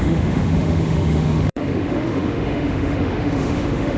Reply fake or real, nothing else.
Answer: fake